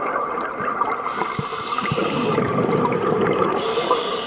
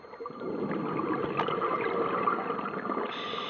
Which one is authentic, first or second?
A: second